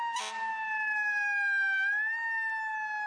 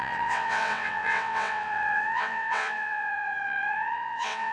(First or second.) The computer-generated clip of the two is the second